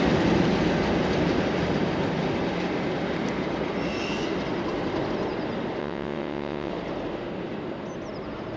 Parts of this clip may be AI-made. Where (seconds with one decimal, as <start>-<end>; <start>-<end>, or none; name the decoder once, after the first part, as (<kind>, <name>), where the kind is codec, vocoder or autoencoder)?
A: 5.8-6.7 (vocoder, WaveNeXt)